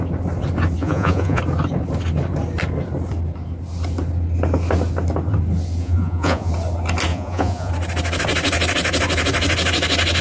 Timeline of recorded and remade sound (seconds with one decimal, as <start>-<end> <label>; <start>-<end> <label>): 0.0-0.8 recorded; 0.8-1.4 remade; 1.4-5.8 recorded; 5.8-6.5 remade; 6.5-7.1 recorded; 7.1-7.7 remade; 7.7-10.2 recorded